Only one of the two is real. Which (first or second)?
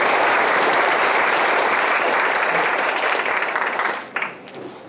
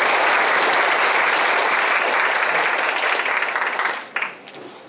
second